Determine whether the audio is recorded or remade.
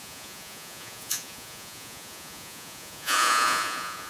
remade